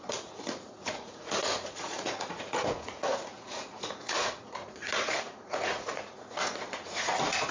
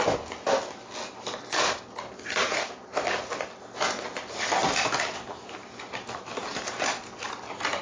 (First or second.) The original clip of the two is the second